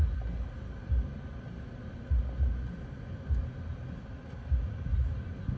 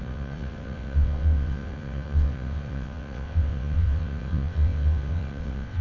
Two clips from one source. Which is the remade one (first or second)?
second